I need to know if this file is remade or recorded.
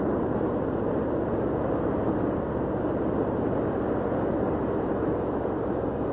recorded